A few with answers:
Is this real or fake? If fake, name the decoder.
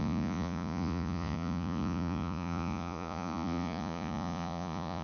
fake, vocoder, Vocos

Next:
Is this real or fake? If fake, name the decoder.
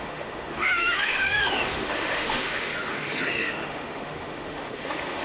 fake, autoencoder, DAC-VAE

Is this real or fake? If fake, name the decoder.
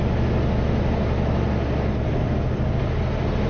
real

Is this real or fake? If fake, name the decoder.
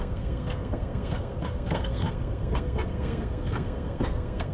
fake, codec, SNAC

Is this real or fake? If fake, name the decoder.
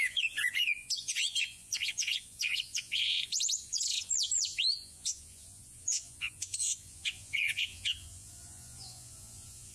fake, vocoder, Vocos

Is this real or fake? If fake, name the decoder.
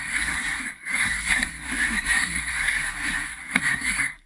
fake, codec, SNAC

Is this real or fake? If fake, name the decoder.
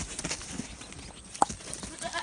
real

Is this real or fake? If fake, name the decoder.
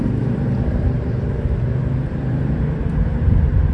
fake, vocoder, BigVGAN v2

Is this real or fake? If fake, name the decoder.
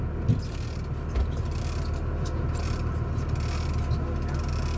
real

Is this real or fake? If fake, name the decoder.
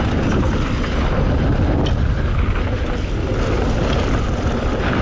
real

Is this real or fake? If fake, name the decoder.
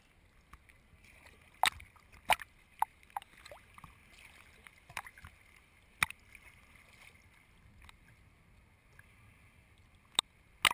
real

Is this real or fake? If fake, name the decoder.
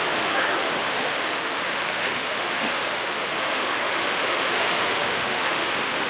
fake, autoencoder, DAC-VAE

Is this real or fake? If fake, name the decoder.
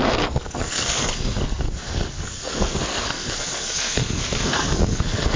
fake, codec, SNAC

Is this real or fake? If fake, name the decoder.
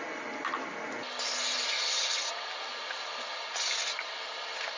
real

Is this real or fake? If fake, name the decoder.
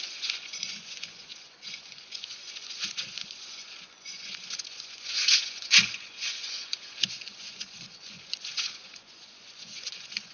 fake, vocoder, Vocos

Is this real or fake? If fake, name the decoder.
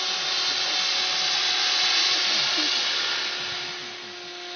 real